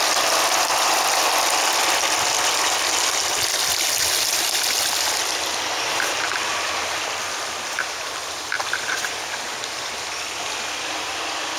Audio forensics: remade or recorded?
recorded